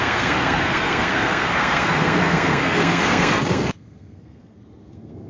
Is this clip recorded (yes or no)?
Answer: no